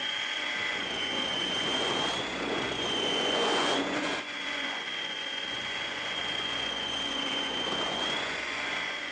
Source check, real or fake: fake